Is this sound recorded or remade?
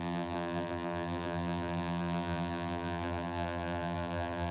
remade